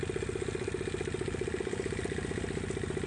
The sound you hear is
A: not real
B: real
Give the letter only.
A